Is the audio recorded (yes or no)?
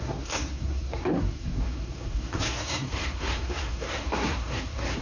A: no